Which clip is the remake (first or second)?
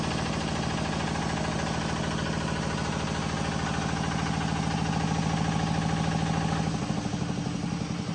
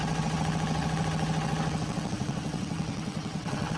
second